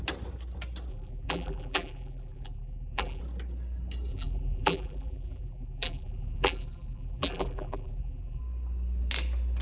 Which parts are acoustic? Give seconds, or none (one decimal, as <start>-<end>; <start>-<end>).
0.0-0.9; 3.2-4.1; 8.4-9.6